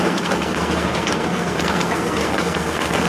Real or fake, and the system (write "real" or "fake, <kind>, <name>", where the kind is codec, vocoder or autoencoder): fake, codec, SNAC